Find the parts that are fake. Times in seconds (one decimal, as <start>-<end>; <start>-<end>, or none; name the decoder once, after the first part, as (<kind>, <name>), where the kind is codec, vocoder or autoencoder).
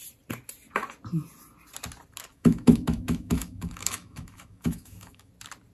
2.3-5.3 (autoencoder, DAC-VAE)